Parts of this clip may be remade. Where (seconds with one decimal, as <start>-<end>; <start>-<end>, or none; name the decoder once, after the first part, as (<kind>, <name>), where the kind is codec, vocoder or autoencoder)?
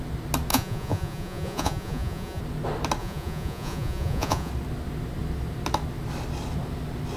0.5-2.4 (vocoder, Vocos); 3.0-4.5